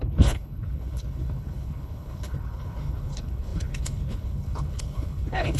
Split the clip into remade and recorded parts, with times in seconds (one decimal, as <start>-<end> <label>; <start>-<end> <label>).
0.0-5.6 remade